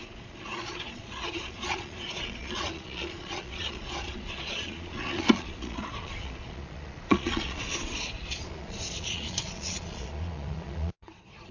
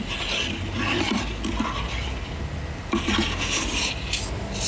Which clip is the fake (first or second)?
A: first